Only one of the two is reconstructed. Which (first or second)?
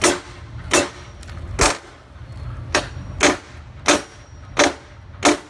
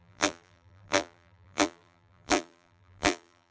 second